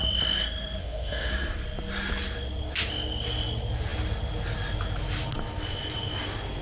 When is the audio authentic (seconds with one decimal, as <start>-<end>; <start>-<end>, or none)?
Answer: 0.0-0.8; 1.3-6.6